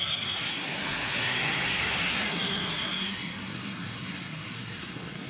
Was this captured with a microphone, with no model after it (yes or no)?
no